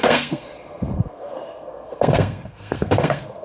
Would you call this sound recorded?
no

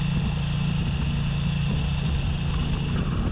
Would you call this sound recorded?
yes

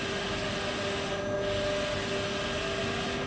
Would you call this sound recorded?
yes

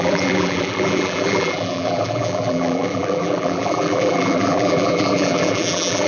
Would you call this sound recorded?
no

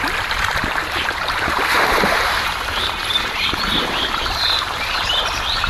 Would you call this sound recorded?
no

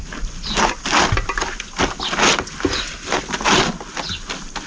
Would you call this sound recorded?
yes